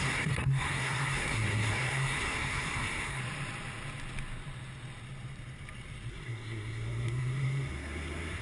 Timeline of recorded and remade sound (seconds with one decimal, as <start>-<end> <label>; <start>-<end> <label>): 0.0-3.2 remade; 3.2-6.1 recorded; 6.1-8.4 remade